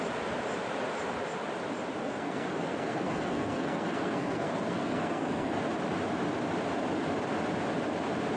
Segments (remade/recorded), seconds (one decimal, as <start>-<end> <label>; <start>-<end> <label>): 0.0-2.0 recorded; 2.0-5.6 remade; 5.6-8.4 recorded